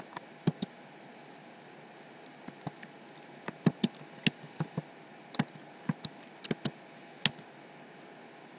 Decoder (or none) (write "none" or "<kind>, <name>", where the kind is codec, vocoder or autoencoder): none